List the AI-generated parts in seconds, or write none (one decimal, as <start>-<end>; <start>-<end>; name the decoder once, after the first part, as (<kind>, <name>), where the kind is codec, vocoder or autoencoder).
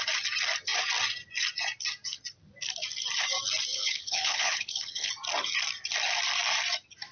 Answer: 3.7-5.1 (codec, HILCodec)